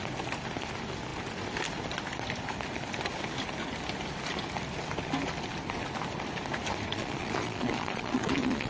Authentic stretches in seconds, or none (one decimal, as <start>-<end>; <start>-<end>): 0.0-6.9